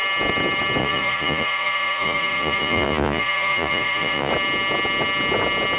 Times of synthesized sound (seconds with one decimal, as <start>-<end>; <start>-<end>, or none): 0.8-4.3